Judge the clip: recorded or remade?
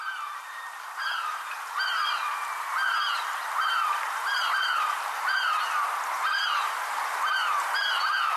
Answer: remade